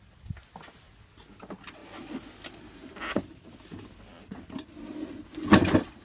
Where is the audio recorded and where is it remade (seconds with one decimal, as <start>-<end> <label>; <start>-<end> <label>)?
0.0-6.0 recorded